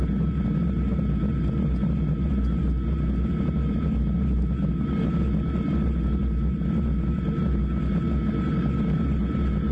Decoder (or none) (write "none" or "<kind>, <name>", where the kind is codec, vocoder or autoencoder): none